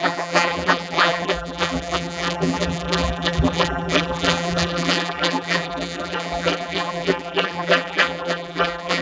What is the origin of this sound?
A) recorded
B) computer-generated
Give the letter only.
B